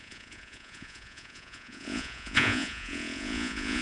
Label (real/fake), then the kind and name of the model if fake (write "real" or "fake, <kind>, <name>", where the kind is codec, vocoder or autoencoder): fake, vocoder, Vocos